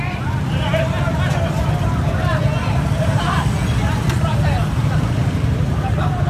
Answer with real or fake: real